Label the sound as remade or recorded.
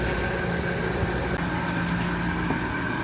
recorded